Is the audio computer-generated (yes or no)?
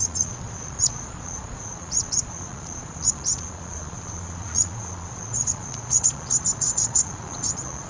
yes